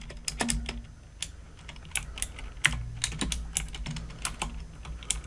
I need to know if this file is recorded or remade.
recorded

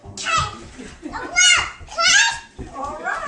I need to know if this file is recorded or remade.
recorded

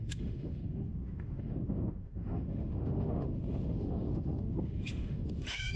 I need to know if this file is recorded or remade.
remade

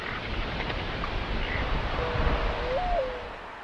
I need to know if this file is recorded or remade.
recorded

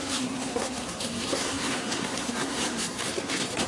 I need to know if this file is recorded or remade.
remade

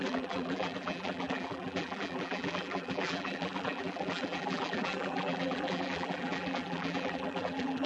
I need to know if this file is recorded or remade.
remade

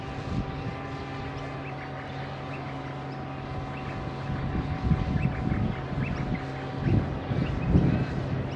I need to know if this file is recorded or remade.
recorded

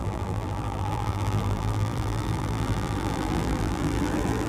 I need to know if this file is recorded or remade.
remade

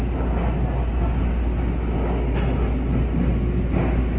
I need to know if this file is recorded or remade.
recorded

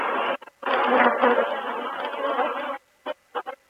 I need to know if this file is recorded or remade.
recorded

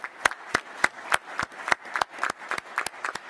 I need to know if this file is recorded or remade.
recorded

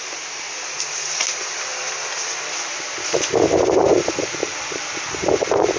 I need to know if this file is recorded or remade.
remade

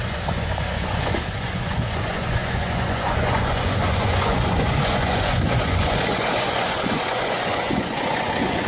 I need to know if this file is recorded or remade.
remade